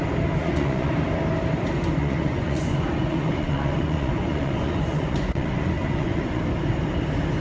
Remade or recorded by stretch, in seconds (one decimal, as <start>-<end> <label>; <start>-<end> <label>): 0.0-0.4 recorded; 0.4-0.9 remade; 0.9-2.0 recorded; 2.0-6.4 remade; 6.4-7.4 recorded